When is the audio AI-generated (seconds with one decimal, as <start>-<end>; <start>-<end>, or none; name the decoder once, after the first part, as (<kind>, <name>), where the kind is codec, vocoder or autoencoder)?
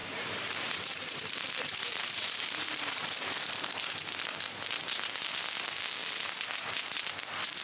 0.0-4.1 (vocoder, BigVGAN v2)